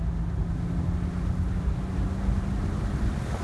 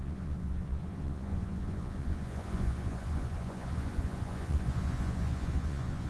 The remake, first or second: second